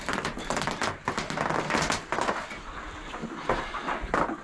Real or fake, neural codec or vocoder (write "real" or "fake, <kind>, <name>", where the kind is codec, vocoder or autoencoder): real